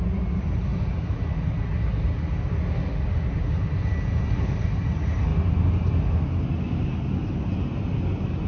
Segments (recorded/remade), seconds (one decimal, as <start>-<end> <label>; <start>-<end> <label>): 0.0-8.5 recorded